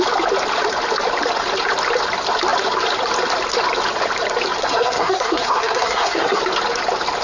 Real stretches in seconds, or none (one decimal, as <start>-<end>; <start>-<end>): 0.0-4.6; 6.4-7.2

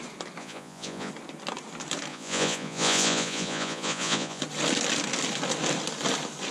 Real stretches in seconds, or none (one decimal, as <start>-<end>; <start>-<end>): 0.0-0.4; 1.1-2.1; 4.4-6.5

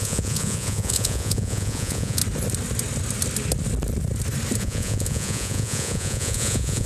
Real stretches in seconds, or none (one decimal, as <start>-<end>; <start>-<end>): 2.2-4.6

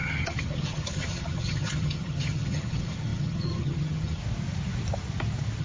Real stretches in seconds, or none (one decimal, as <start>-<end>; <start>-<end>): 4.2-5.6

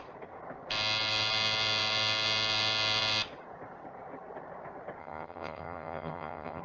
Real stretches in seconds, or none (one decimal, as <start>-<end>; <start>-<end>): 0.0-5.0

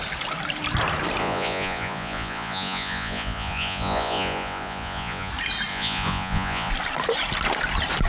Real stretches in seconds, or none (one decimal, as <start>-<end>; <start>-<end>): 0.0-1.2; 5.3-5.7; 6.7-8.1